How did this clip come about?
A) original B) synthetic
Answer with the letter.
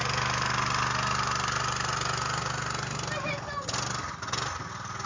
A